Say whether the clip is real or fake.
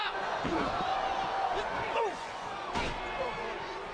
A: fake